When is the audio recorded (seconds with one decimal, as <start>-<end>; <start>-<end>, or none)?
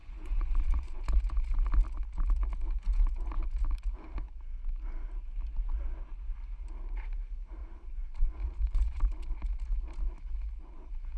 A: 1.0-7.6; 9.0-11.2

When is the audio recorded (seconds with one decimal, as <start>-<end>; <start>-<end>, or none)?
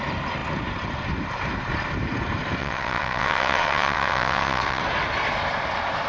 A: 0.0-2.6; 4.8-6.1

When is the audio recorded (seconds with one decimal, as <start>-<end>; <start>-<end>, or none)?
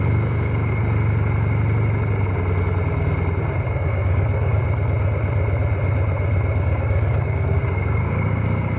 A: 0.8-3.7; 4.6-6.6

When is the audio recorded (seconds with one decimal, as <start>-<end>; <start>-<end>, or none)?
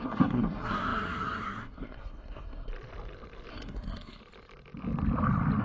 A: 2.7-3.5; 4.2-5.6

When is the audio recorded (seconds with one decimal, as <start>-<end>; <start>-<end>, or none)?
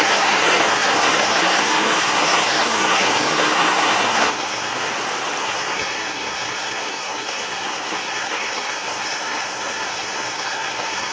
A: 4.9-5.4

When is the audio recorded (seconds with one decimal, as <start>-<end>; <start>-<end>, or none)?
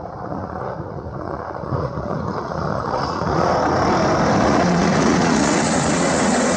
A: 3.5-4.4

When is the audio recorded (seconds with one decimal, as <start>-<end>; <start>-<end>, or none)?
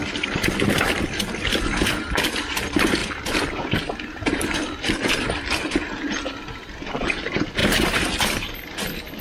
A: 0.0-9.2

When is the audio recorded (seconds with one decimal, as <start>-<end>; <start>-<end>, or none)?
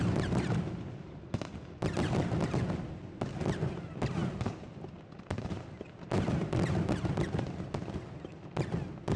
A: 0.0-9.2